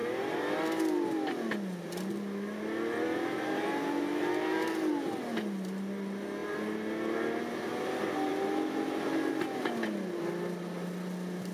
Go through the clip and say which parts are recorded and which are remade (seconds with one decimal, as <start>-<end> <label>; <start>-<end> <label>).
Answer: 0.0-11.5 recorded